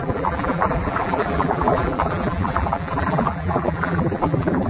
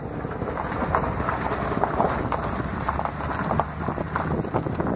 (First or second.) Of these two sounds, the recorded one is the second